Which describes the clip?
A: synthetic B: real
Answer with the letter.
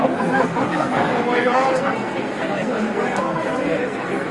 A